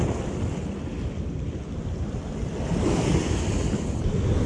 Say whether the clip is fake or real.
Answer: real